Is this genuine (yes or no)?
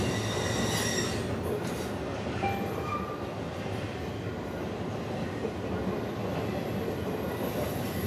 yes